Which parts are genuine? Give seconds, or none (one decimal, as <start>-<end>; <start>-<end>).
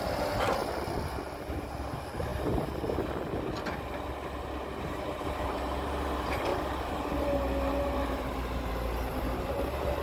0.6-1.5; 2.3-4.8